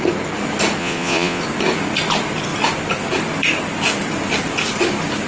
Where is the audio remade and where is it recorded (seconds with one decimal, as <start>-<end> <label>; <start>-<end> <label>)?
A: 0.0-0.8 recorded; 0.8-1.4 remade; 1.4-5.3 recorded

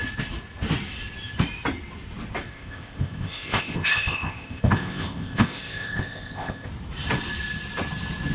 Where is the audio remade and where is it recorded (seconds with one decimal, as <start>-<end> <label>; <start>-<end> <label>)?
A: 0.0-2.5 recorded; 2.5-6.7 remade; 6.7-8.3 recorded

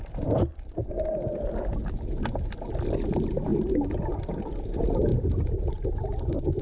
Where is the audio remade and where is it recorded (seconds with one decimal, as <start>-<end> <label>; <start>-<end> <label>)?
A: 0.0-5.1 recorded; 5.1-5.7 remade; 5.7-6.6 recorded

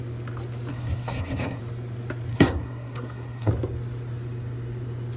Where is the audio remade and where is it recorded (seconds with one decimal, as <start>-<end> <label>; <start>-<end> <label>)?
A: 0.0-0.7 recorded; 0.7-1.6 remade; 1.6-2.3 recorded; 2.3-3.5 remade; 3.5-5.2 recorded

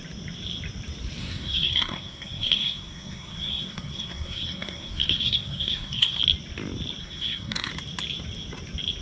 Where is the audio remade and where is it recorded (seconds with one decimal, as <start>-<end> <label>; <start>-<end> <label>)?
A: 0.0-1.2 recorded; 1.2-6.2 remade; 6.2-7.0 recorded; 7.0-7.7 remade; 7.7-9.0 recorded

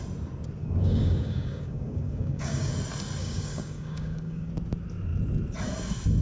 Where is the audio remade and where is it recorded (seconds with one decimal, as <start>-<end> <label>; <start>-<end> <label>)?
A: 0.0-0.6 recorded; 0.6-2.7 remade; 2.7-3.2 recorded; 3.2-4.5 remade; 4.5-6.2 recorded

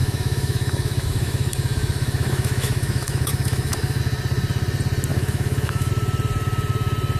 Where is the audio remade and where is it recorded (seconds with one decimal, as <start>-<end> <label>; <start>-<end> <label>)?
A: 0.0-4.0 remade; 4.0-5.1 recorded; 5.1-5.9 remade; 5.9-7.2 recorded

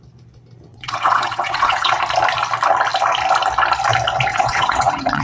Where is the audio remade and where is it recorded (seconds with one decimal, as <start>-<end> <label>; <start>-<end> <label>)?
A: 0.0-0.7 recorded; 0.7-2.0 remade; 2.0-4.3 recorded; 4.3-5.2 remade